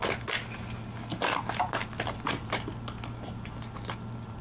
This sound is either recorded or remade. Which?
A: recorded